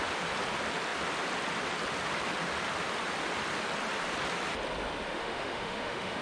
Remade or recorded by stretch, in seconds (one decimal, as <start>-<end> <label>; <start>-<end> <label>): 0.0-5.1 recorded; 5.1-6.2 remade